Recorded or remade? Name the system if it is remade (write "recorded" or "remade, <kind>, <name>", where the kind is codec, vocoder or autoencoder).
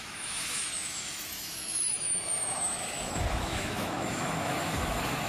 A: remade, autoencoder, DAC-VAE